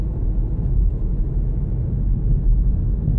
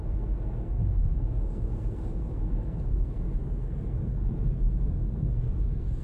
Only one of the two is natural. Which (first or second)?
first